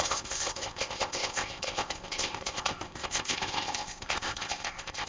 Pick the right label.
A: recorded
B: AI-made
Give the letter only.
B